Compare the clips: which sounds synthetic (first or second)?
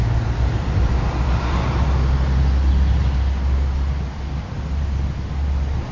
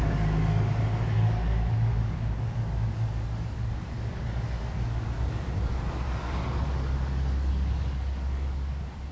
second